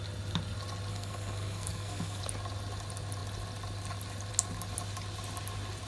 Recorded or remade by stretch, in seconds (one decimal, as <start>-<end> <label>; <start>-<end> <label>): 0.0-0.9 recorded; 0.9-2.2 remade; 2.2-5.9 recorded